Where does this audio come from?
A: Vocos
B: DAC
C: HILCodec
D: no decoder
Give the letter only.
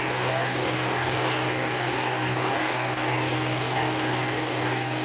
B